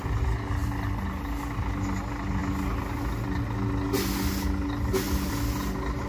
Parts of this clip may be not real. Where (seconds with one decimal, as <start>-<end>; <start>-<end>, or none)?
none